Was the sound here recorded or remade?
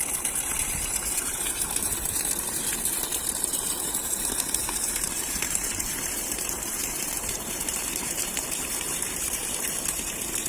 remade